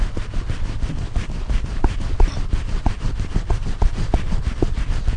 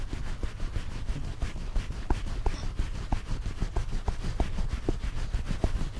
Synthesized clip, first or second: first